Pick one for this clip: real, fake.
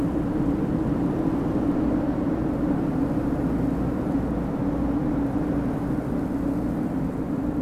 real